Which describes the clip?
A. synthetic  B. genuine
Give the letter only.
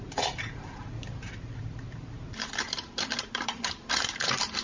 A